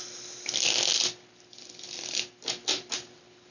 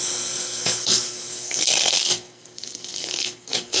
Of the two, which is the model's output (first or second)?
second